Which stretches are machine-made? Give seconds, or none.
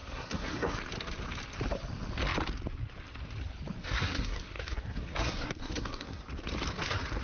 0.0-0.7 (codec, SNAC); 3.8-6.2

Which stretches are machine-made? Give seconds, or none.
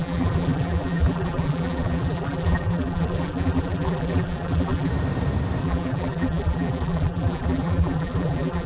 0.0-4.9 (vocoder, BigVGAN v2); 5.6-8.7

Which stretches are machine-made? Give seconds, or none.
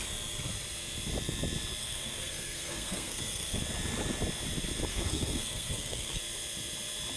1.8-3.6 (codec, SNAC); 4.9-6.2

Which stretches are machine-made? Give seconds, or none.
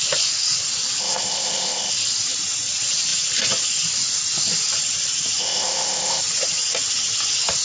1.0-1.9 (codec, ZipCodec); 5.4-6.2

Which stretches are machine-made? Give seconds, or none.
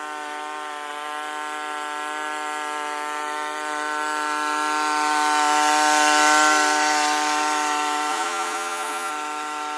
8.1-9.1 (vocoder, Vocos)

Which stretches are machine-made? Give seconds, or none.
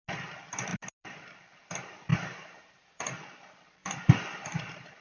2.1-3.0 (vocoder, BigVGAN v2); 3.8-4.6